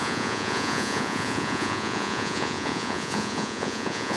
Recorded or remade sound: remade